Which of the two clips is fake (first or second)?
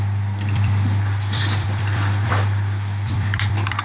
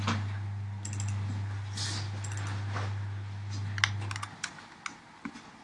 first